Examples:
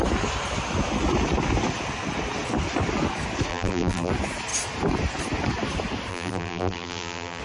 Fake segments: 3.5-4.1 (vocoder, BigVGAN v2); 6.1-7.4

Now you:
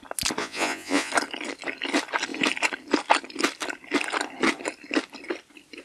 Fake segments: 0.4-1.1 (vocoder, Vocos)

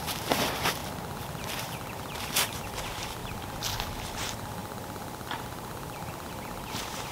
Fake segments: 0.0-0.8 (vocoder, BigVGAN v2); 1.6-3.2; 4.1-7.1

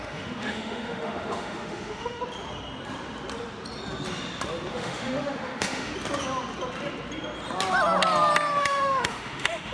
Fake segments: 0.0-2.2 (autoencoder, DAC-VAE); 4.7-5.9; 8.6-9.7

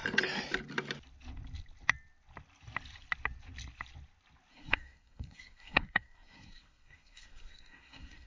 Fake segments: 4.5-8.3 (codec, SNAC)

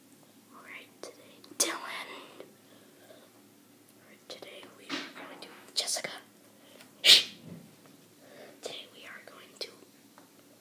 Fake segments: 5.5-6.0 (autoencoder, DAC-VAE)

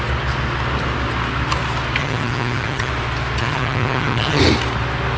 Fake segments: 2.0-2.9 (vocoder, HiFi-GAN); 3.4-4.4

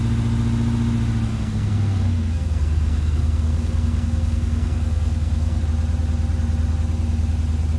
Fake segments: 1.3-5.6 (codec, SNAC)